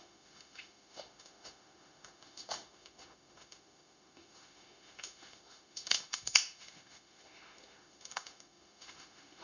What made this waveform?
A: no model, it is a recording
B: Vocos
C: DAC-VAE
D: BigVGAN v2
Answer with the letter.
C